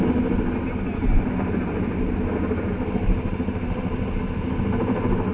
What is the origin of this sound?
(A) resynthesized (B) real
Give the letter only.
B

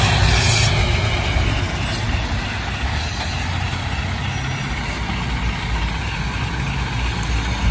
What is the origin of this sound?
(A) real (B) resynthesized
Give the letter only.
A